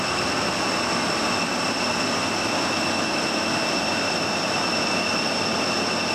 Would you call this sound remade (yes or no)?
yes